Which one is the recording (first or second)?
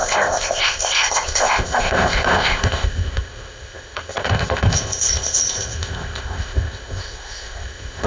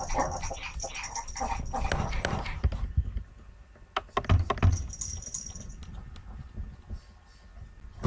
second